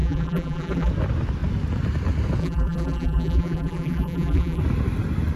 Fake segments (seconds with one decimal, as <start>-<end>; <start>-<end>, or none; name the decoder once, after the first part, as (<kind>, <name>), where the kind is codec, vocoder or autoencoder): 0.0-0.9 (vocoder, BigVGAN v2); 2.4-4.6